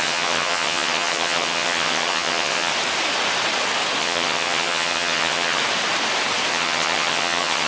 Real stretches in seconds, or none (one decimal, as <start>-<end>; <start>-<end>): 2.7-4.0; 5.6-6.5